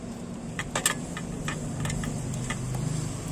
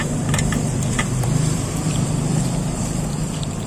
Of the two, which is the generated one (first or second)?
second